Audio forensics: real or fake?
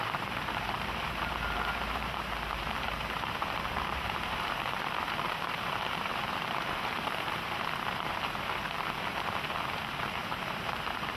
fake